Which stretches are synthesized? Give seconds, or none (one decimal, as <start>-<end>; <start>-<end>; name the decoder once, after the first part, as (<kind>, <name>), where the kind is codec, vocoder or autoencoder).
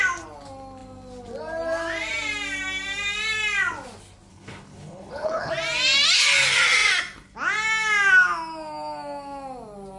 4.3-5.5 (codec, HILCodec)